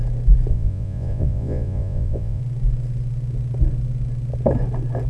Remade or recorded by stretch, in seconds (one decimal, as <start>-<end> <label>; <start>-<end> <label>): 0.0-0.5 recorded; 0.5-2.4 remade; 2.4-5.1 recorded